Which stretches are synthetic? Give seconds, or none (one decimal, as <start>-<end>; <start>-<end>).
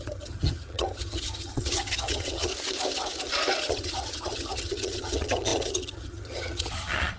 0.0-2.5; 3.7-7.2